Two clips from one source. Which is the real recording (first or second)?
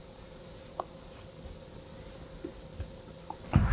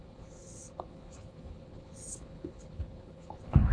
first